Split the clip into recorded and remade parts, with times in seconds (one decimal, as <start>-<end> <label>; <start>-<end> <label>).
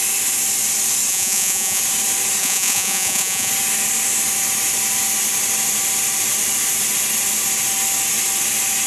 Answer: 0.0-1.1 recorded; 1.1-1.8 remade; 1.8-2.4 recorded; 2.4-3.5 remade; 3.5-8.9 recorded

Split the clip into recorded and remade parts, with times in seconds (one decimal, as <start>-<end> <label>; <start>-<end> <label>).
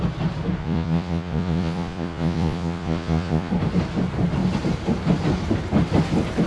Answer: 0.0-0.6 recorded; 0.6-3.5 remade; 3.5-6.5 recorded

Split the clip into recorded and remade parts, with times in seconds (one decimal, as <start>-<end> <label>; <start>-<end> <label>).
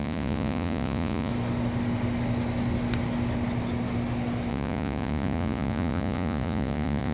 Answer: 0.0-1.3 remade; 1.3-4.5 recorded; 4.5-7.1 remade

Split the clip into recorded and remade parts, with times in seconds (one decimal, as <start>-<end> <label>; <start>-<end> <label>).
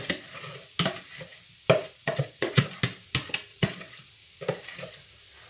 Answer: 0.0-1.8 recorded; 1.8-2.7 remade; 2.7-3.5 recorded; 3.5-4.1 remade; 4.1-5.5 recorded